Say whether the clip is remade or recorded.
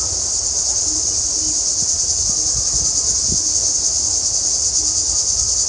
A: recorded